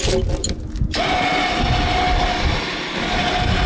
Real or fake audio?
real